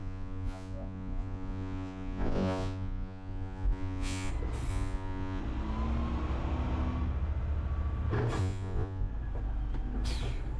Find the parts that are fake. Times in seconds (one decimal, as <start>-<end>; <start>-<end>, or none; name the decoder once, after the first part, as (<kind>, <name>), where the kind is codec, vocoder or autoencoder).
0.0-4.3 (vocoder, Vocos); 4.7-5.4; 8.4-9.1